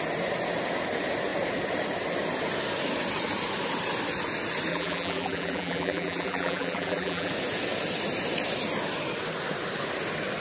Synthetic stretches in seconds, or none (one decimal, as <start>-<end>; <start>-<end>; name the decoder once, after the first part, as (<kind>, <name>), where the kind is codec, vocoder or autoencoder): 4.7-7.3 (vocoder, BigVGAN v2)

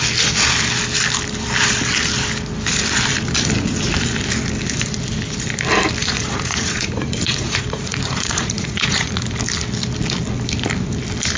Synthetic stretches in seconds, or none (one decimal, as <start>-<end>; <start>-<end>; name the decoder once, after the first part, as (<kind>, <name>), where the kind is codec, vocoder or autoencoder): 6.0-9.2 (vocoder, Vocos)

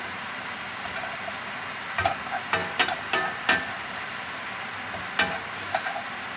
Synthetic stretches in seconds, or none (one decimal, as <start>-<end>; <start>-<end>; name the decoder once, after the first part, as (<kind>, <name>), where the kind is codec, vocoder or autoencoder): 2.6-4.4 (vocoder, BigVGAN v2)